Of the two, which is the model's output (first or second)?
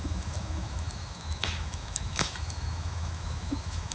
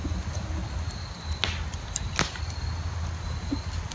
first